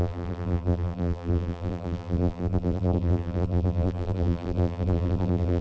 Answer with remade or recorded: remade